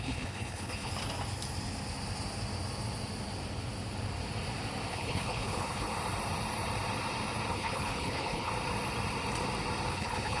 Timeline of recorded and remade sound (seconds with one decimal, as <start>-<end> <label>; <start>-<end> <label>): 0.0-0.9 remade; 0.9-4.9 recorded; 4.9-5.9 remade; 5.9-7.5 recorded; 7.5-8.5 remade; 8.5-9.9 recorded; 9.9-10.4 remade